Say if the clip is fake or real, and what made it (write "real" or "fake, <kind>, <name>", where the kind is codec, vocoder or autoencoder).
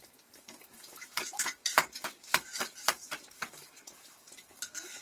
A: fake, codec, DAC